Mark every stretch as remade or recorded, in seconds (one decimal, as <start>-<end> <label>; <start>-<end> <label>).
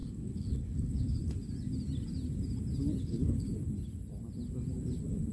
0.0-1.2 remade; 1.2-3.0 recorded; 3.0-3.5 remade; 3.5-5.3 recorded